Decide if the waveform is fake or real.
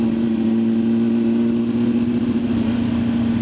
real